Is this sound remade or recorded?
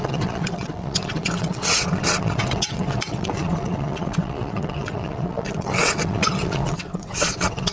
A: remade